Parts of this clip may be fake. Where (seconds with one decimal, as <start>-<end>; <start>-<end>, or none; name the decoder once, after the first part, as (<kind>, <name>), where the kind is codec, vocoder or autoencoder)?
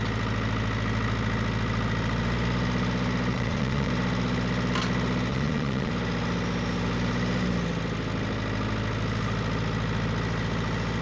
3.3-3.9 (vocoder, Vocos); 5.3-5.9